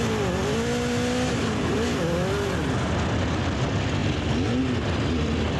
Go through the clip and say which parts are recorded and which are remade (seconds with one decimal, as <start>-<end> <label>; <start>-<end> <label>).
0.0-5.6 recorded